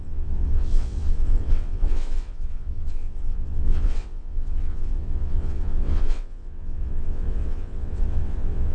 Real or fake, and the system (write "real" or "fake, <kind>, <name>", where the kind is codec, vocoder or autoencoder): fake, vocoder, WaveNeXt